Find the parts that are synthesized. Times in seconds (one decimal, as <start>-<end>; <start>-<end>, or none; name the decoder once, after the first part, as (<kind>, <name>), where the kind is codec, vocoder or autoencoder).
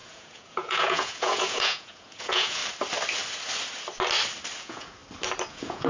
0.0-2.6 (vocoder, Vocos); 4.6-5.0; 5.5-5.9